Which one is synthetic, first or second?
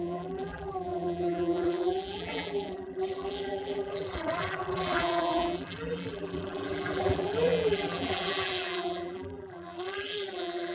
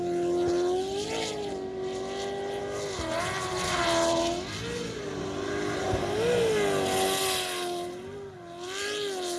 first